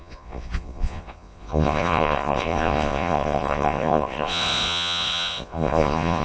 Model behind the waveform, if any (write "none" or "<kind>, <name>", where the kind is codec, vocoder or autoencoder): vocoder, Vocos